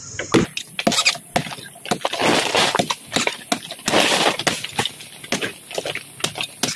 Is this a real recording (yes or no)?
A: yes